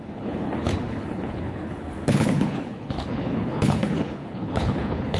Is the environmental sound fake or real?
fake